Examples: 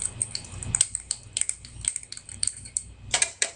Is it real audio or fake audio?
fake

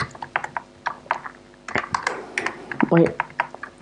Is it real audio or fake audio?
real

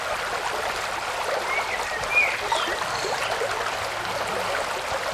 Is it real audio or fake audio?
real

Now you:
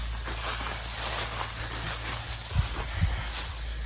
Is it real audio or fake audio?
real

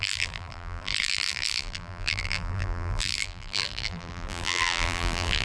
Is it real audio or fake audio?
fake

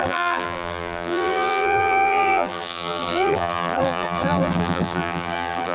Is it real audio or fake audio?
fake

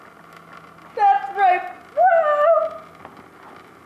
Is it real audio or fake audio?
real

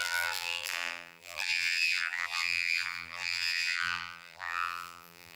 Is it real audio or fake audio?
fake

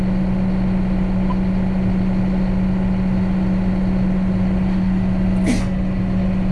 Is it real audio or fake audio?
real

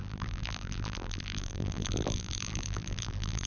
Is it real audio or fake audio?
fake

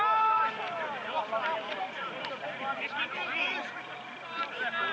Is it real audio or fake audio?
real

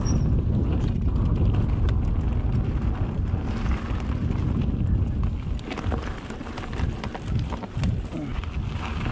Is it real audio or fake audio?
real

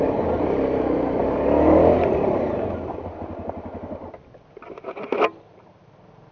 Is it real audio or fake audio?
real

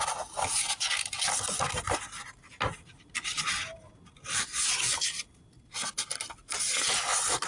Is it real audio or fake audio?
real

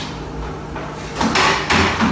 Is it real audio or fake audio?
real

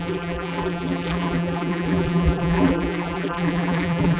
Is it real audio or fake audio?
fake